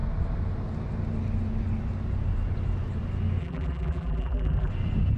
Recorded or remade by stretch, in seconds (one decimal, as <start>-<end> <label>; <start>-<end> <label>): 0.0-3.4 recorded; 3.4-4.7 remade; 4.7-5.2 recorded

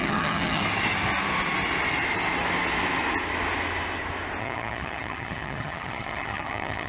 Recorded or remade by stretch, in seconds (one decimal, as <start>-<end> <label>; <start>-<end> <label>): 0.0-0.6 remade; 0.6-4.4 recorded; 4.4-6.9 remade

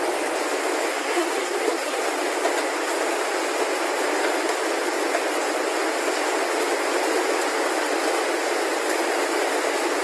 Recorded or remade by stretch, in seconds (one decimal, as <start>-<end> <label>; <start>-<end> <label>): 0.0-0.9 recorded; 0.9-2.0 remade; 2.0-10.0 recorded